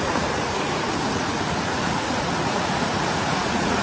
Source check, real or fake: fake